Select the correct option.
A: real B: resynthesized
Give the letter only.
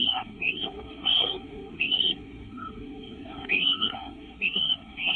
B